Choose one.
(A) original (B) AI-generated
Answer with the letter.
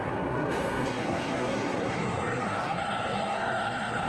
B